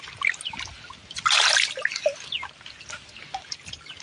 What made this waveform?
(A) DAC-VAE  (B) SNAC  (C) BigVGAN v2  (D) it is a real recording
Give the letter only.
D